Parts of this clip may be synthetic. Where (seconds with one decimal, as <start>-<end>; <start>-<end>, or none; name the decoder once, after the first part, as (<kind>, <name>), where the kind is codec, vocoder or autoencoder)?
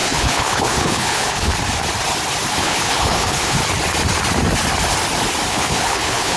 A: 0.0-1.5 (codec, HILCodec); 2.5-3.6; 5.5-6.4